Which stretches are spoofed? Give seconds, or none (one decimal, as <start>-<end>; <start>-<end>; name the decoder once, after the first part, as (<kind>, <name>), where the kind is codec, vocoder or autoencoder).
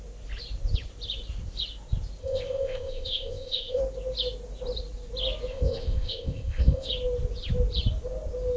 2.2-3.8 (codec, ZipCodec); 5.5-6.9